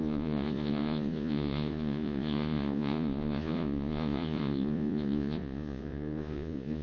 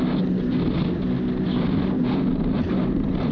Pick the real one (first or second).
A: second